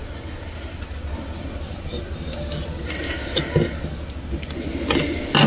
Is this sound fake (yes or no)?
no